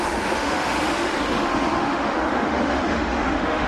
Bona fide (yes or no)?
no